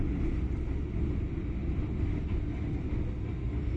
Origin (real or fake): real